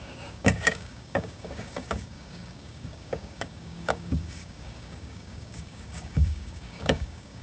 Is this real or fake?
fake